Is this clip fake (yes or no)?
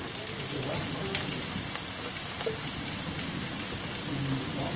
no